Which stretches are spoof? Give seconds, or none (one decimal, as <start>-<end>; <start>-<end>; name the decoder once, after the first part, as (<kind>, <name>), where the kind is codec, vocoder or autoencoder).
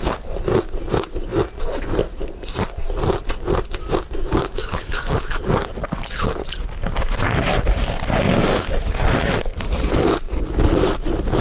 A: 4.3-5.7 (codec, DAC)